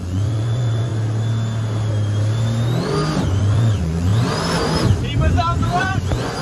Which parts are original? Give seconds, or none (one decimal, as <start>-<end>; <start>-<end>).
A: 0.9-3.4; 4.1-5.8